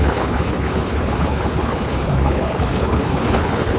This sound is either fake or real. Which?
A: fake